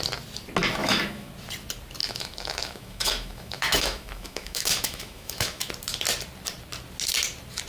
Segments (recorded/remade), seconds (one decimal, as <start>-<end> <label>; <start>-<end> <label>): 0.0-0.8 recorded; 0.8-1.3 remade; 1.3-2.0 recorded; 2.0-5.7 remade; 5.7-7.7 recorded

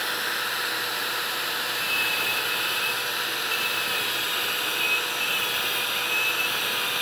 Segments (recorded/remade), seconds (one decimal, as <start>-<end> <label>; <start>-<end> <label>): 0.0-0.9 recorded; 0.9-2.9 remade; 2.9-7.0 recorded

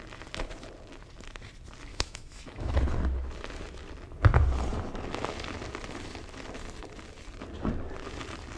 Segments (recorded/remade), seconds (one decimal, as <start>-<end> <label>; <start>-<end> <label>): 0.0-1.9 recorded; 1.9-2.7 remade; 2.7-8.6 recorded

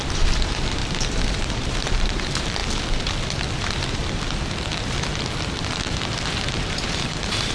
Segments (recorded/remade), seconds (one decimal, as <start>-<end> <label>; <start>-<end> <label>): 0.0-0.8 remade; 0.8-1.4 recorded; 1.4-2.6 remade; 2.6-3.5 recorded; 3.5-4.0 remade; 4.0-5.6 recorded; 5.6-7.5 remade

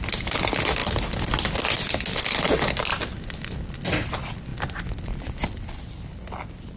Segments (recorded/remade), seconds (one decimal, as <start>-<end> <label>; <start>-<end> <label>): 0.0-6.8 recorded

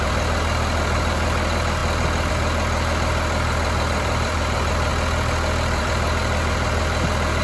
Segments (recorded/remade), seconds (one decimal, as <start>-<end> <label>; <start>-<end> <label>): 0.0-1.8 remade; 1.8-2.3 recorded; 2.3-4.9 remade; 4.9-5.8 recorded; 5.8-7.4 remade

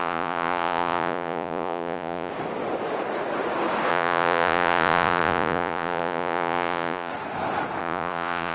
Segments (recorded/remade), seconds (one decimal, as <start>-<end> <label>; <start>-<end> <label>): 0.0-2.3 remade; 2.3-3.9 recorded; 3.9-7.1 remade; 7.1-7.8 recorded; 7.8-8.5 remade